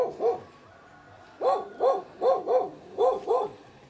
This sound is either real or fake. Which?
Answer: real